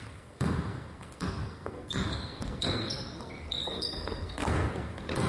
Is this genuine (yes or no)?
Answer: no